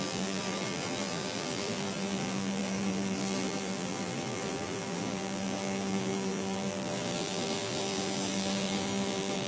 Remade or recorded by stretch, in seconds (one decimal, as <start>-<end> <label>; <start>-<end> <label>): 0.0-9.5 remade